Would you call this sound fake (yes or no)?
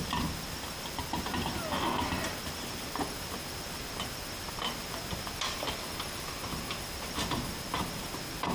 no